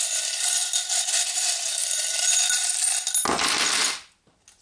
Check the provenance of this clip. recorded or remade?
recorded